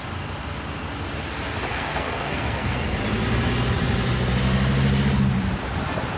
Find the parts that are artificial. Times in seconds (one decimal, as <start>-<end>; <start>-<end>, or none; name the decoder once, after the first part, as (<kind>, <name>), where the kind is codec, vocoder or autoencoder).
1.7-2.9 (codec, SNAC)